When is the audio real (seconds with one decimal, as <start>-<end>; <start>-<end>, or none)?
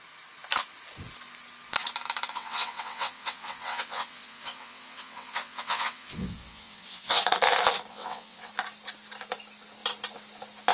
0.0-2.3; 7.2-7.9; 8.5-10.7